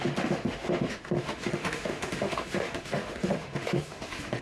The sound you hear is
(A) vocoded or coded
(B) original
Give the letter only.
A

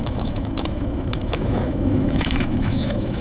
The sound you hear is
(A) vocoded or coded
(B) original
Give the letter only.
A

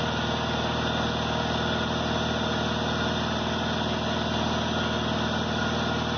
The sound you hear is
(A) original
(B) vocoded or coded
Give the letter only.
A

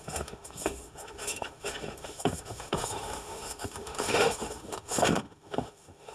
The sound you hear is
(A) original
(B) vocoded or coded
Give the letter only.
B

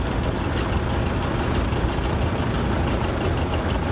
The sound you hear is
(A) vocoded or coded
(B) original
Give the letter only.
B